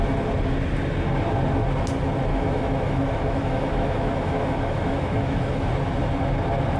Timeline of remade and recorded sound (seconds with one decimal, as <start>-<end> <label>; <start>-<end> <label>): 0.0-2.3 recorded; 2.3-5.7 remade; 5.7-6.8 recorded

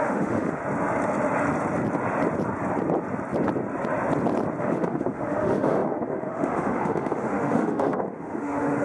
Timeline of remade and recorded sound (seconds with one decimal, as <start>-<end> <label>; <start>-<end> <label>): 0.0-0.6 remade; 0.6-4.6 recorded; 4.6-8.8 remade

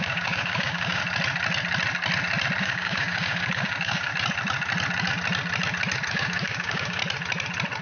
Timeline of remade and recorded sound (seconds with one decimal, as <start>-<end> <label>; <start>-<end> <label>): 0.0-1.0 remade; 1.0-2.6 recorded; 2.6-4.1 remade; 4.1-6.1 recorded; 6.1-7.0 remade; 7.0-7.8 recorded

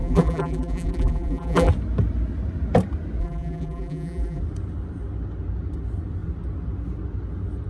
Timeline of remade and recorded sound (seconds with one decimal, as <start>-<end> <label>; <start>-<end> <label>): 0.0-1.7 remade; 1.7-3.2 recorded; 3.2-4.4 remade; 4.4-7.7 recorded

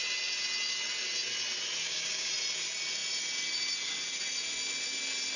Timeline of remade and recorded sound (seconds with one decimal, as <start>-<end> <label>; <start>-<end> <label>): 0.0-1.8 recorded; 1.8-2.3 remade; 2.3-5.4 recorded